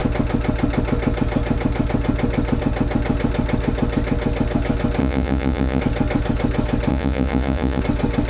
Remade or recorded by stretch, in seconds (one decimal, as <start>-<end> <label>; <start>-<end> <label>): 0.0-5.0 recorded; 5.0-5.8 remade; 5.8-6.9 recorded; 6.9-7.8 remade; 7.8-8.3 recorded